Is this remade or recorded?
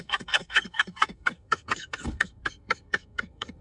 remade